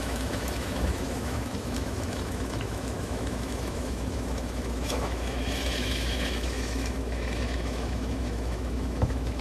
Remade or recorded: remade